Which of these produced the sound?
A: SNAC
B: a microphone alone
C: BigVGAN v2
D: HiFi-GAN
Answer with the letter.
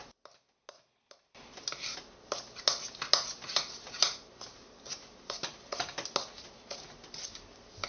B